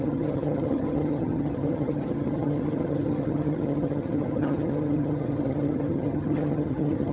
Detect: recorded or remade remade